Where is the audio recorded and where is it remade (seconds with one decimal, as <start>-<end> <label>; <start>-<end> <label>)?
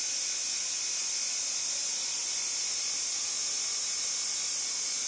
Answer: 0.0-5.1 recorded